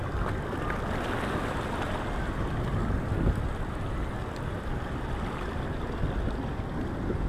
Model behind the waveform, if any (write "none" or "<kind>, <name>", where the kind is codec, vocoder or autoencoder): none